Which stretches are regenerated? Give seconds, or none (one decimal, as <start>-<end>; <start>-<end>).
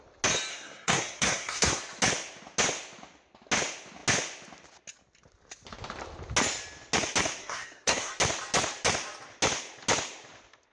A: 0.5-1.8; 7.4-8.1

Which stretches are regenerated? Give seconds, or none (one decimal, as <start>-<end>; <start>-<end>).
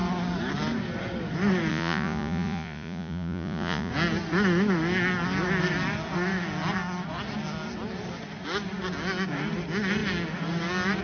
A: 1.7-3.9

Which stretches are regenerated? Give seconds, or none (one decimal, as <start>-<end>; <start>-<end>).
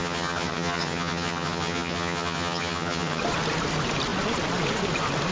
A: 0.0-3.2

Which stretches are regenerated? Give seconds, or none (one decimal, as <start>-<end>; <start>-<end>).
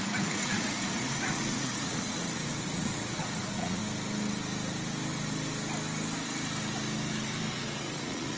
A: 0.0-3.8; 7.5-8.4